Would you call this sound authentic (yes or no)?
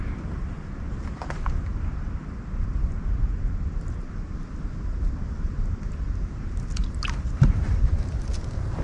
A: yes